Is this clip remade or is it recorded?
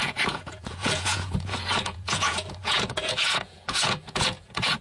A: remade